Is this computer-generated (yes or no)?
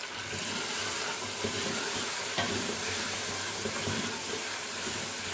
no